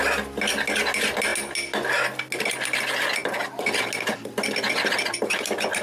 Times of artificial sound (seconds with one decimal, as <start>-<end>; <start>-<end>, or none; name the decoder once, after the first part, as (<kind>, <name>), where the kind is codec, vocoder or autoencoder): none